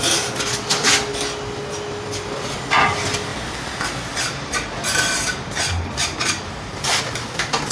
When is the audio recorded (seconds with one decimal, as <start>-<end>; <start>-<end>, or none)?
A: 0.0-3.3; 7.0-7.7